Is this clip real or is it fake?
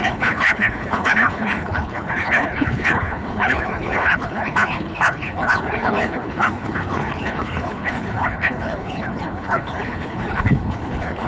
fake